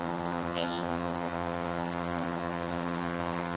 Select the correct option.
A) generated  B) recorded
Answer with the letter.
A